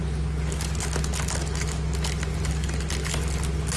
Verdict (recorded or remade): recorded